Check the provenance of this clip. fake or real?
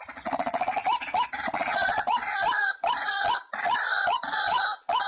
fake